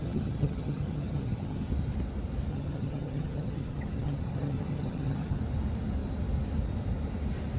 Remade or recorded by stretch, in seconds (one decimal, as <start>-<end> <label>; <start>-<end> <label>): 0.0-1.7 remade; 1.7-2.5 recorded; 2.5-5.4 remade; 5.4-7.6 recorded